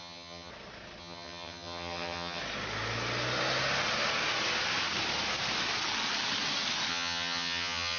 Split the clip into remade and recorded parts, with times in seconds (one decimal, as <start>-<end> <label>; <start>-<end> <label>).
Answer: 0.0-0.5 remade; 0.5-1.0 recorded; 1.0-2.4 remade; 2.4-6.9 recorded; 6.9-8.0 remade